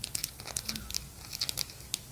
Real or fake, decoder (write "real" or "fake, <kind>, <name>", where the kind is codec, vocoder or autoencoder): real